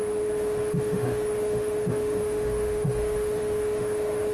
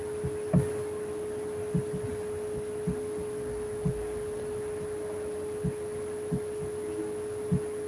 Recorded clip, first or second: second